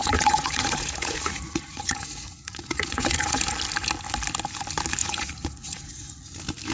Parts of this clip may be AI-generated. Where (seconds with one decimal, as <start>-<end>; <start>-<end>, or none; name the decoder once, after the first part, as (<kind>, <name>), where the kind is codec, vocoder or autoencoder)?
0.0-3.4 (vocoder, Vocos); 5.0-6.2